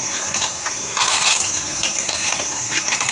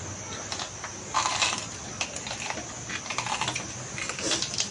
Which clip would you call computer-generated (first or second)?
first